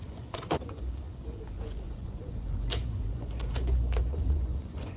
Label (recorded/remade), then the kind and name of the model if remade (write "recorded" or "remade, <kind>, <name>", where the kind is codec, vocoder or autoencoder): remade, vocoder, Vocos